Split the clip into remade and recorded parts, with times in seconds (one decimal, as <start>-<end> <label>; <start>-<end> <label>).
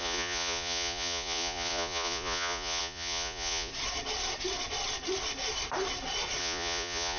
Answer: 0.0-3.7 remade; 3.7-6.4 recorded; 6.4-7.2 remade